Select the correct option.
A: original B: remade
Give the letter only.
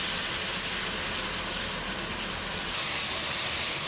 A